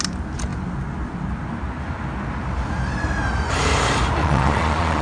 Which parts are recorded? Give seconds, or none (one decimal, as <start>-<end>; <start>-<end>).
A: 0.0-4.2